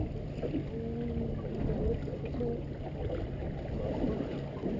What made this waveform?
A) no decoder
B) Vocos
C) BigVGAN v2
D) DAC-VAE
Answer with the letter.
A